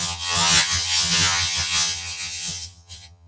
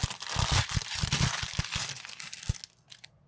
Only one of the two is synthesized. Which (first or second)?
first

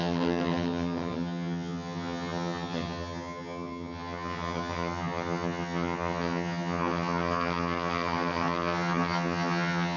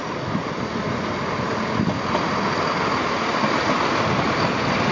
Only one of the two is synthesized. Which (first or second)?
first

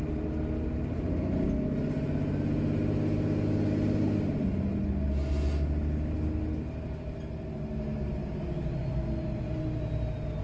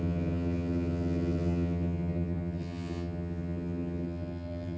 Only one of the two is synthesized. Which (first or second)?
second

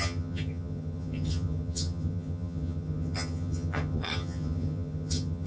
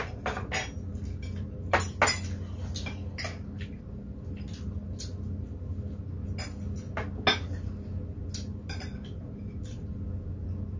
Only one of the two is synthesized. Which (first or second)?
first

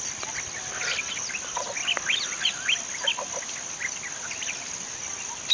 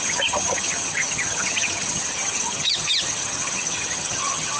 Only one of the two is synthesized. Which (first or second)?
second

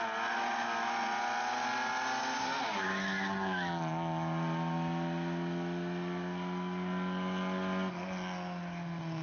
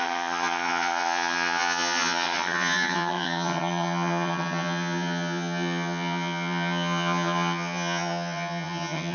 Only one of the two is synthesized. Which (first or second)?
second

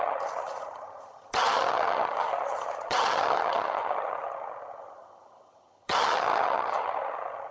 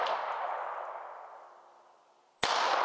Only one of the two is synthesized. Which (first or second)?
first